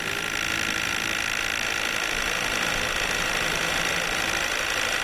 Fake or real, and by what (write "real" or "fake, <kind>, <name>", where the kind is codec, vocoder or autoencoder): real